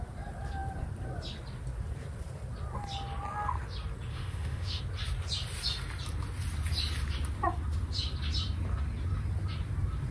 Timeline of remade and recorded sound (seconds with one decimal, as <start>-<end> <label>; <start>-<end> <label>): 0.0-4.1 recorded; 4.1-4.8 remade; 4.8-10.1 recorded